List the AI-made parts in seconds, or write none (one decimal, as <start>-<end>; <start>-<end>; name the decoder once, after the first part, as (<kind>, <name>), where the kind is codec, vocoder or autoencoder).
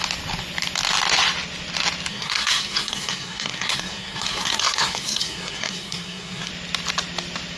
2.1-6.5 (codec, SNAC)